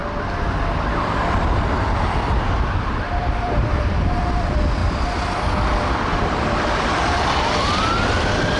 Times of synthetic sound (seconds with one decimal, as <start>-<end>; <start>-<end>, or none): 1.8-4.8; 5.8-8.6